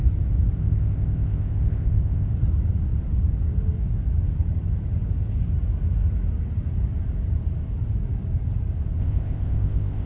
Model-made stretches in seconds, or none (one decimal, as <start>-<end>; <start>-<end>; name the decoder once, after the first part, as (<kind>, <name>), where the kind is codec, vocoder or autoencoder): 0.6-2.3 (codec, ZipCodec); 9.0-10.1